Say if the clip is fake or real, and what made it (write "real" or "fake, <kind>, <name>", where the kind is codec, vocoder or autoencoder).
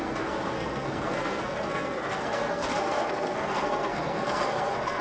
fake, codec, SNAC